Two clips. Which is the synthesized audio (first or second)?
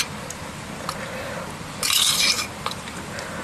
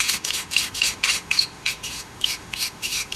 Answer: second